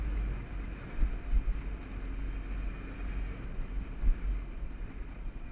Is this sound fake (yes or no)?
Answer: no